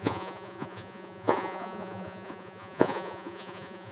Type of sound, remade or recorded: remade